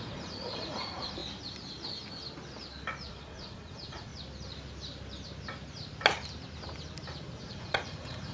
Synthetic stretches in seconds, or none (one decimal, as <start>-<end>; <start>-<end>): 0.0-1.2; 3.1-4.1; 7.4-8.3